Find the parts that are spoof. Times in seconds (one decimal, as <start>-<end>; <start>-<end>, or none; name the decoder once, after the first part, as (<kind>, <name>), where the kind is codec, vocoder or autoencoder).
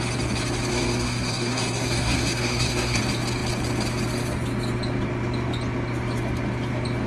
0.7-3.0 (codec, SNAC)